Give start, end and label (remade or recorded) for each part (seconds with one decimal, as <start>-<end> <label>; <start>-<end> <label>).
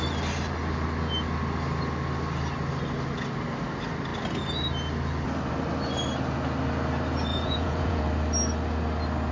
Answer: 0.0-7.3 recorded; 7.3-8.0 remade; 8.0-9.3 recorded